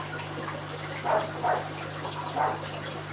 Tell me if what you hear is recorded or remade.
remade